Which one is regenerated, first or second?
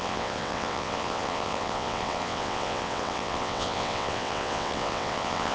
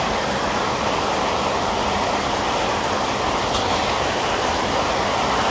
first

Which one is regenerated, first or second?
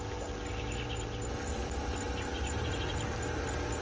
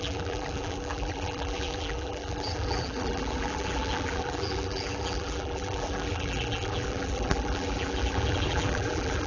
second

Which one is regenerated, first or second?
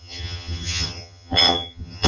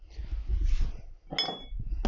first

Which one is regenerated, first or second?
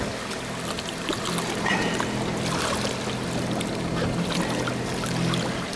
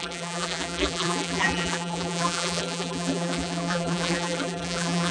second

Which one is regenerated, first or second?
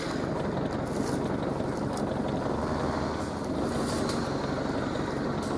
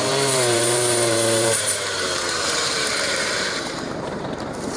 second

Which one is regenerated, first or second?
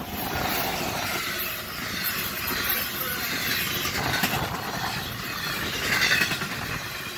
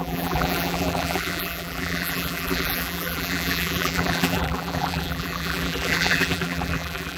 second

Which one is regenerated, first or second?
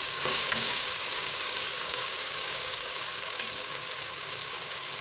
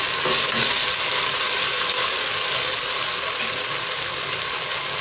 first